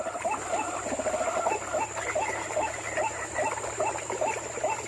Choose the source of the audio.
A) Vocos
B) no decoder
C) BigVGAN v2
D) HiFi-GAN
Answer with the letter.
B